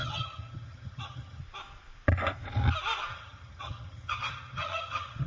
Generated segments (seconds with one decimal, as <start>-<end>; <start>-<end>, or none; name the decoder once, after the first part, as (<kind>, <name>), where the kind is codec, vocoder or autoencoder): 0.0-1.4 (vocoder, HiFi-GAN); 3.1-5.3